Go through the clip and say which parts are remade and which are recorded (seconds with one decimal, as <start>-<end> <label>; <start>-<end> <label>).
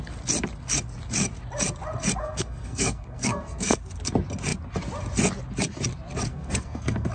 0.0-2.2 recorded; 2.2-3.8 remade; 3.8-6.3 recorded; 6.3-7.1 remade